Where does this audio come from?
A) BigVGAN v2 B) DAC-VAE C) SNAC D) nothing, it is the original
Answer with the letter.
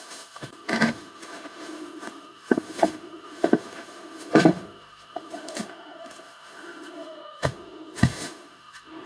B